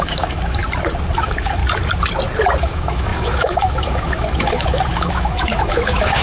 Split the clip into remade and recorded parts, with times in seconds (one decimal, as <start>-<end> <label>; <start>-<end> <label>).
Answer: 0.0-0.6 remade; 0.6-1.2 recorded; 1.2-1.6 remade; 1.6-2.6 recorded; 2.6-6.2 remade